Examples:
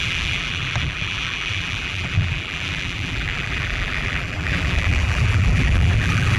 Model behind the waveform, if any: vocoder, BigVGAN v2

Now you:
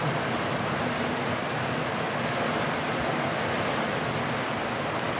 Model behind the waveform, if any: none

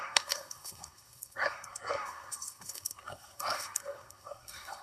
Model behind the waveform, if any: codec, SNAC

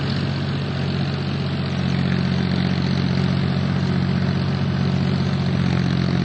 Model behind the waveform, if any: none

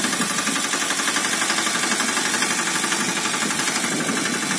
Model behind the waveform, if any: none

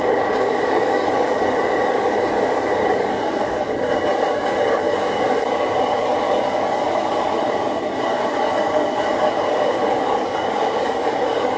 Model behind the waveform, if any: codec, DAC